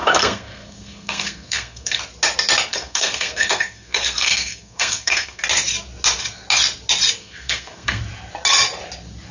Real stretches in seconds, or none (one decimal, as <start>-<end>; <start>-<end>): 2.0-2.7; 5.4-7.2; 8.0-9.3